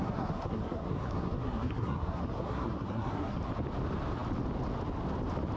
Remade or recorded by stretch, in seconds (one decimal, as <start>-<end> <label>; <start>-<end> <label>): 0.0-3.4 remade; 3.4-5.6 recorded